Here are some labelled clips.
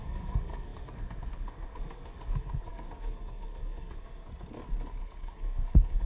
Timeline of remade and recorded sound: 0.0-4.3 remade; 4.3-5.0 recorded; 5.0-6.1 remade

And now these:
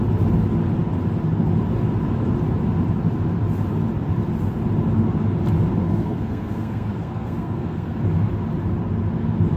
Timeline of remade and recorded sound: 0.0-5.8 recorded; 5.8-8.0 remade; 8.0-9.6 recorded

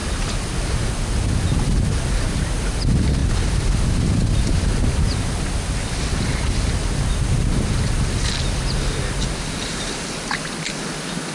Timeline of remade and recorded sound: 0.0-11.3 recorded